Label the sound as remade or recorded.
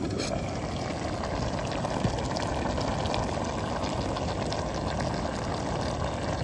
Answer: recorded